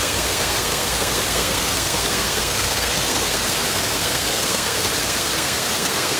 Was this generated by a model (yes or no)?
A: yes